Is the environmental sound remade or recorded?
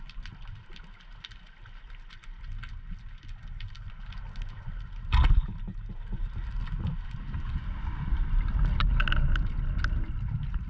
recorded